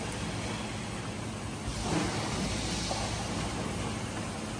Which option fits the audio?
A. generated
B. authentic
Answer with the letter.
B